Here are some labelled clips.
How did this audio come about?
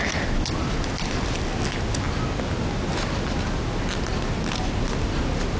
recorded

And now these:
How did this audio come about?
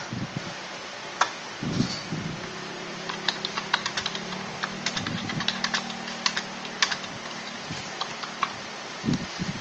remade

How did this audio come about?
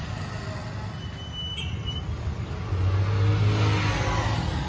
recorded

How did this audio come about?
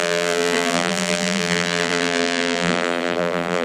remade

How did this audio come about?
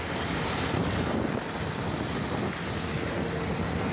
recorded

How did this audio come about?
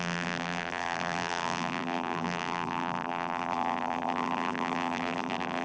remade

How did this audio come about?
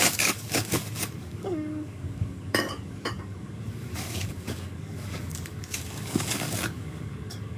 remade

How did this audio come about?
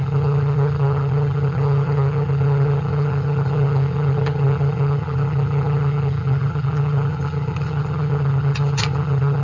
remade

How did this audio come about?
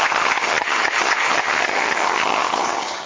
remade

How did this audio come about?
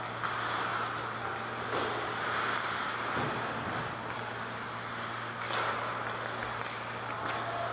recorded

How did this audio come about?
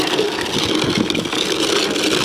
recorded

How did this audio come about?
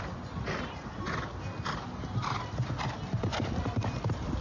recorded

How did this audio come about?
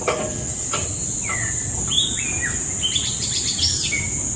recorded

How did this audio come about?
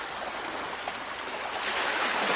recorded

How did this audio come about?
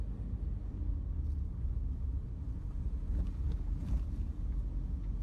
recorded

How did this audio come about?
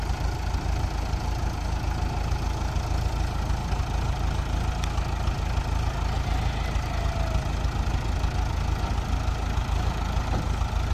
recorded